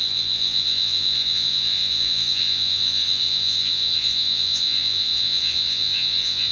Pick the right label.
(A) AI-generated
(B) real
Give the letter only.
A